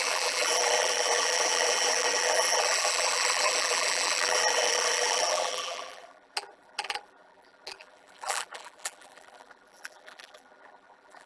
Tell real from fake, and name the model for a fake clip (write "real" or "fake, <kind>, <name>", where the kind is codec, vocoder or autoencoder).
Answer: fake, vocoder, BigVGAN v2